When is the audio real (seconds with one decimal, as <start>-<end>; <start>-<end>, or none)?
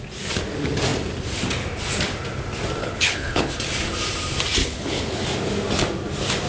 0.0-2.8; 3.5-4.6; 5.2-6.5